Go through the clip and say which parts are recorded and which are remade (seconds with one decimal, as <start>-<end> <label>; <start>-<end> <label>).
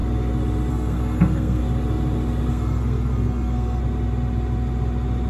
0.0-0.7 recorded; 0.7-1.6 remade; 1.6-2.5 recorded; 2.5-3.8 remade; 3.8-5.3 recorded